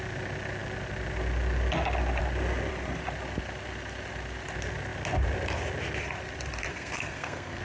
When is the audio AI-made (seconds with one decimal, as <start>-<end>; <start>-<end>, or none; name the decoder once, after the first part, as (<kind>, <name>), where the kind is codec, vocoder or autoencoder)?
6.7-7.6 (codec, SNAC)